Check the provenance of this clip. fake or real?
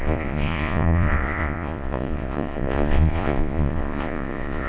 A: fake